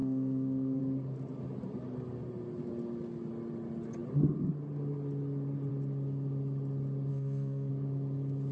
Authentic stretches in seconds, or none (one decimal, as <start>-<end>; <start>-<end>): 0.8-7.1; 7.7-8.5

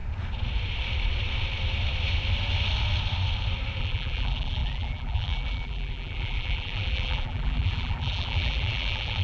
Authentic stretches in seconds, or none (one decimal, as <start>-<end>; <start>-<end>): 0.0-3.8

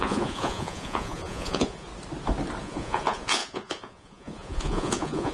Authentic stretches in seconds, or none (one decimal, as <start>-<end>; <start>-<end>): 1.9-2.6

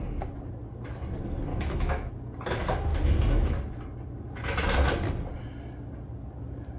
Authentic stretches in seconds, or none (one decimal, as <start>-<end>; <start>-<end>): 0.0-1.5; 2.1-6.8

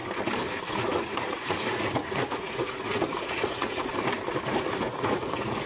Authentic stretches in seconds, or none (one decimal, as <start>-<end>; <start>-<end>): 0.0-0.7; 3.9-4.6

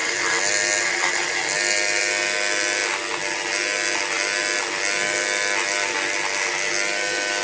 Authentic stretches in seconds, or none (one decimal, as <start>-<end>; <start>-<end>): 0.0-7.4

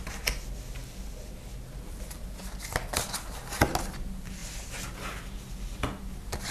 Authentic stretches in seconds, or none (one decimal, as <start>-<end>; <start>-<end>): 0.0-6.5

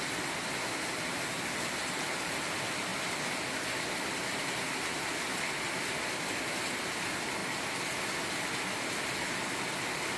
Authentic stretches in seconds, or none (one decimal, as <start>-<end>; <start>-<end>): 0.0-10.2